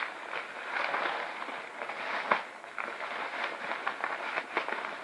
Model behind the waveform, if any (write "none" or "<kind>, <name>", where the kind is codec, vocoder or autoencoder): none